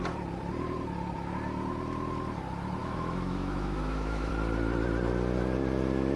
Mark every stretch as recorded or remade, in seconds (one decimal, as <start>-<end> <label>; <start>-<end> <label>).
0.0-2.8 recorded; 2.8-4.3 remade; 4.3-6.2 recorded